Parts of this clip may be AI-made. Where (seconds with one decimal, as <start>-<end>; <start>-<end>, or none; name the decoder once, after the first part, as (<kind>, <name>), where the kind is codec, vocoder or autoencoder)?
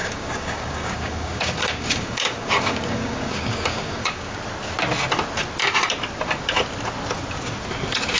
0.0-4.4 (codec, DAC)